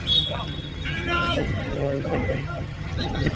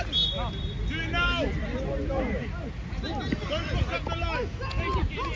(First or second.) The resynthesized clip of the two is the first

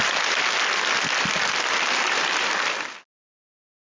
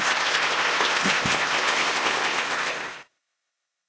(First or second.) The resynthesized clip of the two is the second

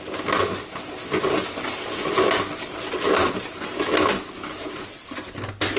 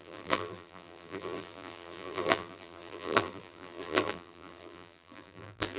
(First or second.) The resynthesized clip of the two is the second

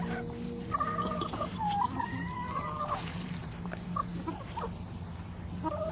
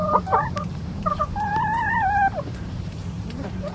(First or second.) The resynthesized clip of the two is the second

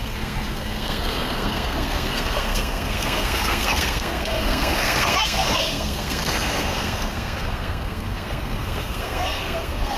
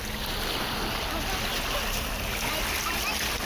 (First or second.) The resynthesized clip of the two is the first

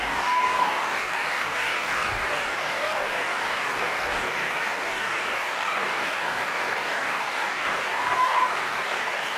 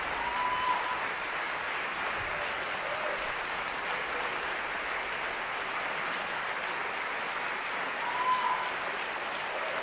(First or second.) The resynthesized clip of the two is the first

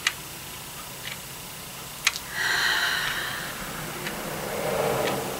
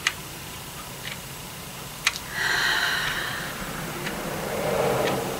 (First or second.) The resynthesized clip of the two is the second